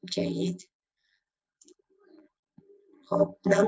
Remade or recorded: remade